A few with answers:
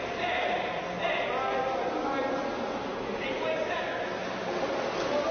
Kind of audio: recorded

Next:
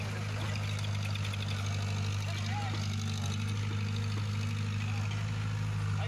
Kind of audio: recorded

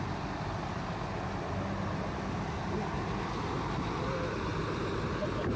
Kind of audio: recorded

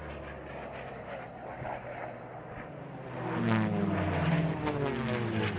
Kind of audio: recorded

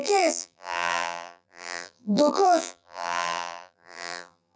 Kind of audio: remade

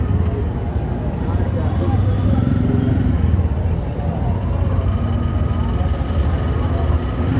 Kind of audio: recorded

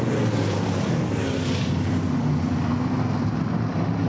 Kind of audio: recorded